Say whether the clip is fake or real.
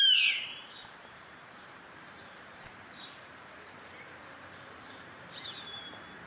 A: fake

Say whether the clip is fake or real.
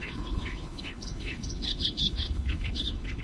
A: fake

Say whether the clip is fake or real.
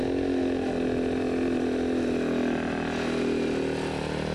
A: real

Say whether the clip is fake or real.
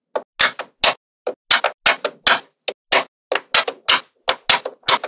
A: real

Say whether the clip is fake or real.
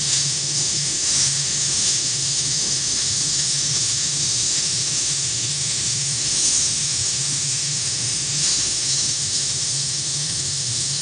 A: fake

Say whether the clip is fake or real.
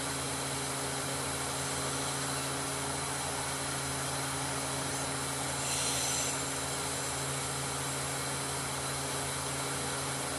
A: real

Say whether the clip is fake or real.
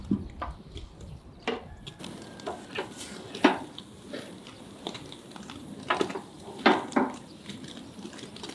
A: fake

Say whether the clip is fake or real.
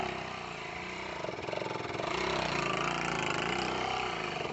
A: fake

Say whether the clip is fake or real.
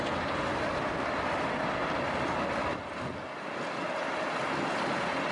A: real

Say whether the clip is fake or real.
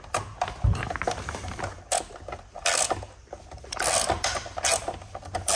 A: real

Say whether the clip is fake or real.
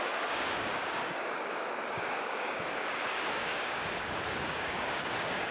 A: fake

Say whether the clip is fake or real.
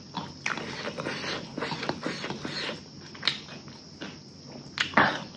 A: real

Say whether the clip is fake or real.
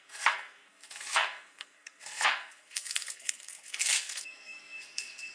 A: fake